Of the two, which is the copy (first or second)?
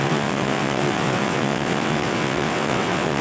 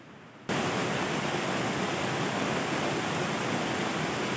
first